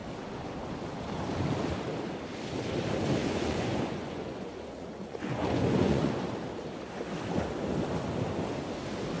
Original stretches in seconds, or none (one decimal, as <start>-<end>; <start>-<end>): 0.0-3.2; 6.1-9.2